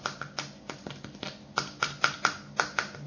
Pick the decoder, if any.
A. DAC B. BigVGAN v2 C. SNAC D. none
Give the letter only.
D